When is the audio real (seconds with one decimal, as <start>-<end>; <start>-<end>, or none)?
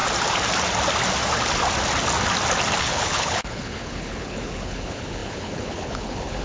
0.0-2.8